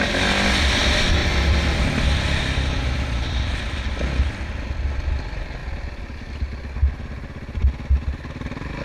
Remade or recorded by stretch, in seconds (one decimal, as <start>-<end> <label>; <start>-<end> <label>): 0.0-1.2 recorded; 1.2-3.6 remade; 3.6-8.8 recorded